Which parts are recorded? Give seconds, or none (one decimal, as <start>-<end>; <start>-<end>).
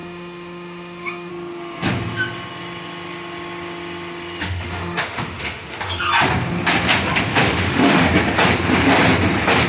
1.3-4.4; 6.0-7.3; 8.1-9.7